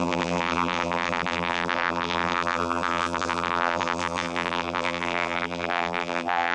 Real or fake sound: fake